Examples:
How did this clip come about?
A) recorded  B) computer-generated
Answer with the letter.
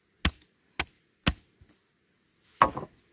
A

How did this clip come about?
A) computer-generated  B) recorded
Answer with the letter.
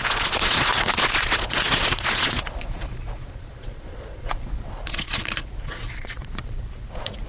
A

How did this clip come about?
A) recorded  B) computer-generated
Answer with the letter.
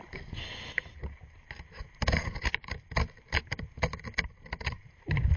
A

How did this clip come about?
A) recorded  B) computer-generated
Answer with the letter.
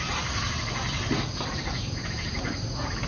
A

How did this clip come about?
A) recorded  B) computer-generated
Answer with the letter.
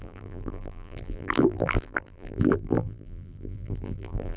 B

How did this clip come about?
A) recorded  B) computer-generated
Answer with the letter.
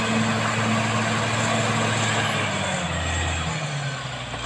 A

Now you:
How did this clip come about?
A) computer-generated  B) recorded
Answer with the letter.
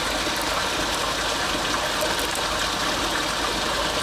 B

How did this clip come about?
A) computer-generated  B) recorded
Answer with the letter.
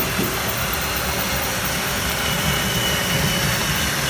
B